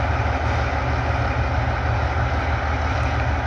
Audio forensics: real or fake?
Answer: real